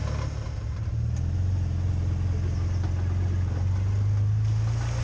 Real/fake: real